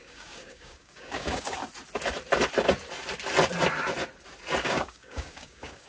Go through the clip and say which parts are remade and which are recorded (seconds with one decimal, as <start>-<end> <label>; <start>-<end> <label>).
0.0-1.6 remade; 1.6-4.6 recorded; 4.6-5.9 remade